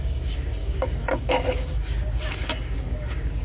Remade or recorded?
remade